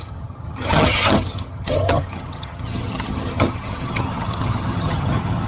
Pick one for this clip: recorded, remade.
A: remade